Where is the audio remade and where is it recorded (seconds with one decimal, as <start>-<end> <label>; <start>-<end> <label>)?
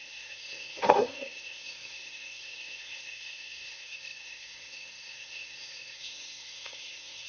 0.0-7.3 remade